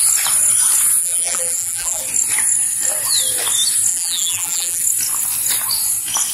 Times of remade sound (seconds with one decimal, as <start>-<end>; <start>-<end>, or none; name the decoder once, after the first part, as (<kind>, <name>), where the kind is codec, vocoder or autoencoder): 1.0-2.0 (vocoder, BigVGAN v2); 3.9-4.8